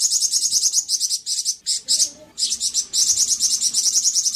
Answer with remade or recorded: recorded